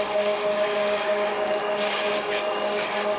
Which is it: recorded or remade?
remade